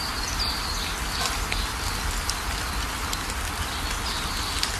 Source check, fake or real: real